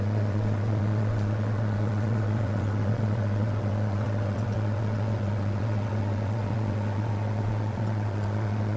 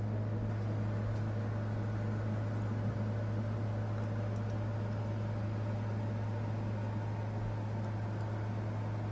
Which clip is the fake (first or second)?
first